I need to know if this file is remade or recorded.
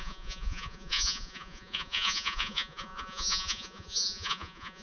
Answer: remade